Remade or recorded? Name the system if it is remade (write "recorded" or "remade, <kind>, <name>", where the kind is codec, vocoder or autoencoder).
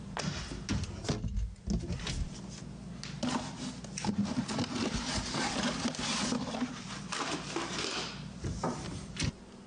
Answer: recorded